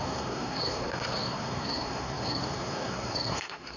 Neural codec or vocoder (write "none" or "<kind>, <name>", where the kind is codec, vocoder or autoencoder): codec, SNAC